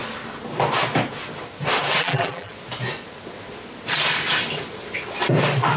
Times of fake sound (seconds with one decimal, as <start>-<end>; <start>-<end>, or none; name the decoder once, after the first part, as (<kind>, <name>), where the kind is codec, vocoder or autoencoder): 2.0-2.5 (vocoder, BigVGAN v2)